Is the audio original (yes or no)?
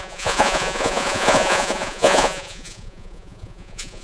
no